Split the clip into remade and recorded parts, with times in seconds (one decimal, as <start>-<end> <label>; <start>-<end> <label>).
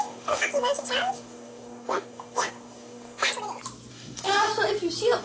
0.0-3.3 remade; 3.3-3.9 recorded; 3.9-4.5 remade; 4.5-5.2 recorded